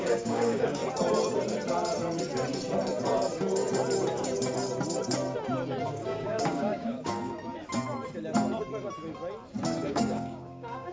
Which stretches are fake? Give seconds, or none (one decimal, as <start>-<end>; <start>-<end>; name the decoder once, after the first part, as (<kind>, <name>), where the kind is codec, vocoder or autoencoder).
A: 0.0-0.8 (codec, DAC); 5.8-7.4; 9.9-10.9